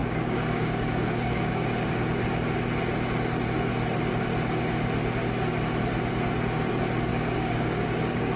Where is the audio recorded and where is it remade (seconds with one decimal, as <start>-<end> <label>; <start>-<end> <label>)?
0.0-1.9 remade; 1.9-7.1 recorded; 7.1-8.4 remade